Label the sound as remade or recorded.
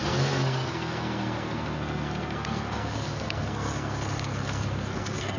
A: remade